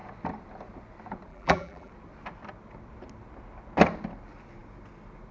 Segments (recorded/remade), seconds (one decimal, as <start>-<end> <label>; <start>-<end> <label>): 0.0-1.3 recorded; 1.3-1.9 remade; 1.9-5.3 recorded